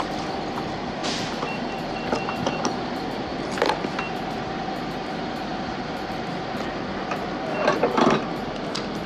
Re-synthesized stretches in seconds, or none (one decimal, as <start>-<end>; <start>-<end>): 5.5-6.9